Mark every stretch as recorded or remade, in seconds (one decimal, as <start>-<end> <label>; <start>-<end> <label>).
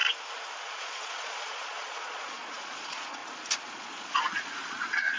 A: 0.0-0.6 recorded; 0.6-3.2 remade; 3.2-3.7 recorded; 3.7-5.2 remade